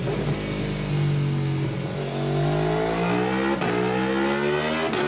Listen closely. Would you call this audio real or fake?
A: real